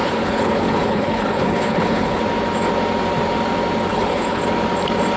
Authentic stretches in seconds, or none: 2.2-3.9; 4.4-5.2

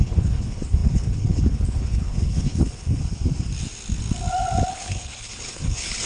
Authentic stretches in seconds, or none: 3.0-4.7

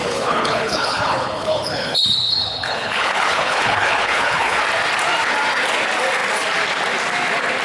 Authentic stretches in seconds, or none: 4.6-7.6

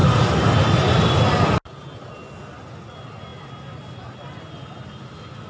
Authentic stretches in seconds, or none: 0.0-5.5

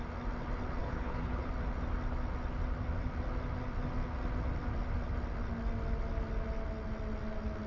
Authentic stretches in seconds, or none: 0.0-0.8; 1.5-7.7

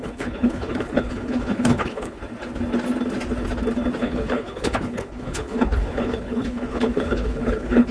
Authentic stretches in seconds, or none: 2.2-4.0